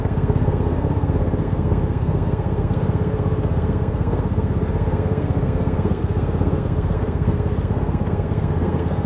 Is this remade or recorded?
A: remade